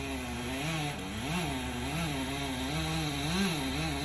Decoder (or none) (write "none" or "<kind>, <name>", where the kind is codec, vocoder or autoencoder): none